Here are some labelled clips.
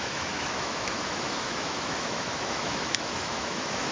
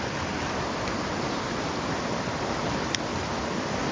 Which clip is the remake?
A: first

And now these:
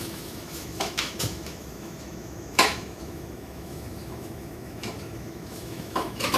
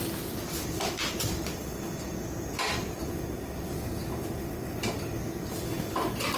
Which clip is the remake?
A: first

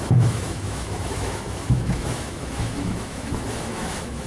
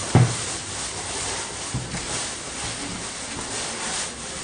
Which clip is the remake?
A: first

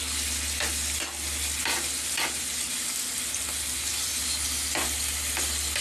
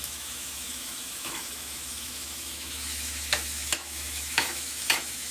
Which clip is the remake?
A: second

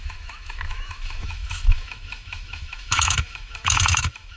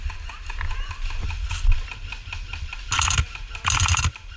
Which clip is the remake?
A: first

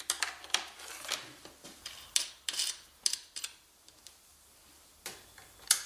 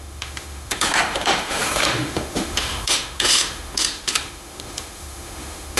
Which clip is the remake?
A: second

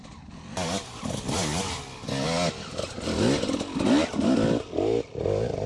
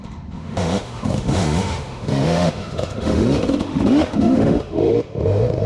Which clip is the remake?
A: second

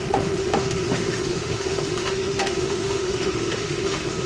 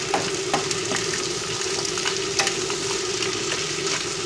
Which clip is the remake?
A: first